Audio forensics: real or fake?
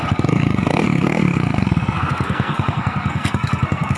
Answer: fake